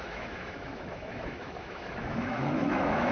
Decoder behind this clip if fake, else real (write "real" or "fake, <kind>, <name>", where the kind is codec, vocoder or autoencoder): fake, autoencoder, DAC-VAE